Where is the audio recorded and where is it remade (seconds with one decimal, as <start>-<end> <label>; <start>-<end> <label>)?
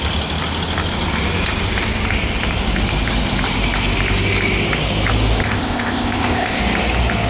0.0-5.4 recorded; 5.4-6.6 remade; 6.6-7.3 recorded